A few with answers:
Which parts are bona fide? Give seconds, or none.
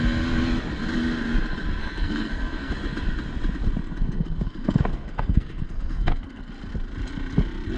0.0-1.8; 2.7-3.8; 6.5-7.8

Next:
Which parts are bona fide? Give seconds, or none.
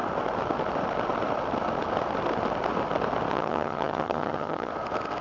0.0-3.3; 4.7-5.2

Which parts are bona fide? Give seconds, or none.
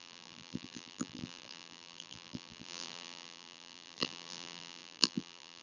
none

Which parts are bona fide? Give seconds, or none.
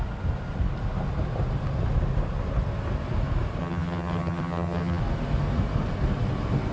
0.0-3.6; 5.0-6.7